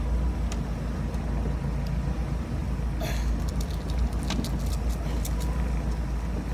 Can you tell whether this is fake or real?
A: real